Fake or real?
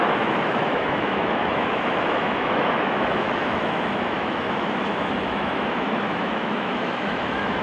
fake